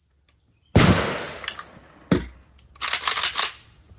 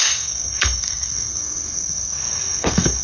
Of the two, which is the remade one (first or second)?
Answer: second